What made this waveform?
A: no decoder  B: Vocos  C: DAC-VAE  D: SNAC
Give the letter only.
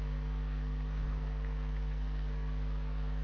D